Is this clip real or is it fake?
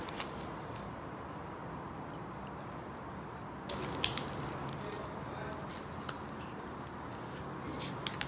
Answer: real